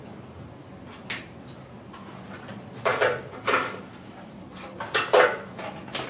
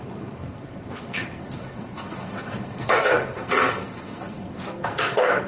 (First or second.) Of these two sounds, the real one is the first